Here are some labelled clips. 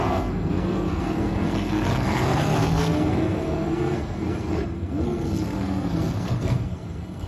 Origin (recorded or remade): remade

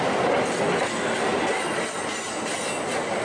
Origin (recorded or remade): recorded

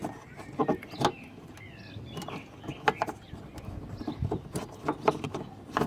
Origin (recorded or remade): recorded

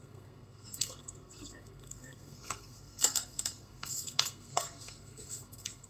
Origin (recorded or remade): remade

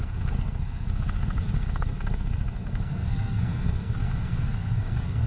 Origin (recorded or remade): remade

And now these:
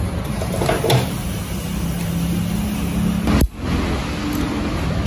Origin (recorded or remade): recorded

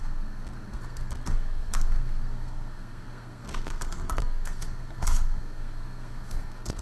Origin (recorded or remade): remade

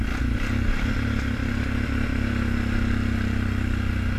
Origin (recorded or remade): recorded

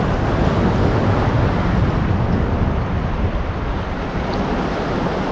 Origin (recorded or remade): recorded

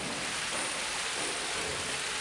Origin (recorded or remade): recorded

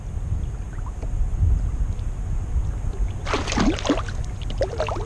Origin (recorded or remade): recorded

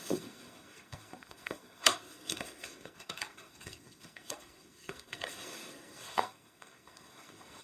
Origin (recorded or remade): remade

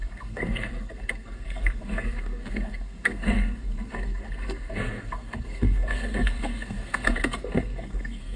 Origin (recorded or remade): remade